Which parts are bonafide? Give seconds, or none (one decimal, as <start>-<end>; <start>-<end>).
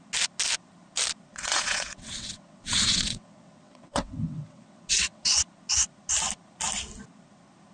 0.0-1.3; 5.4-7.7